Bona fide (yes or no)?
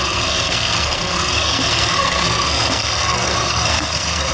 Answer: no